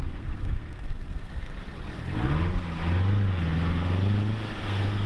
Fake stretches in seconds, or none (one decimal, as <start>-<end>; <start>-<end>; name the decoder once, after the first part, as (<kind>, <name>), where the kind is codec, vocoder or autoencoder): 0.0-1.5 (codec, SNAC); 4.6-5.1